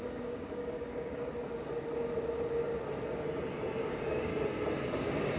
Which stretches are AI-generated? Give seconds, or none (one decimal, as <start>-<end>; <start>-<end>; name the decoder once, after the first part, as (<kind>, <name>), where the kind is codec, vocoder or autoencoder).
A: 0.0-1.3 (codec, DAC); 3.8-4.3; 5.0-5.4